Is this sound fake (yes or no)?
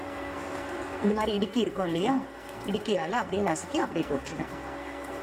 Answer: yes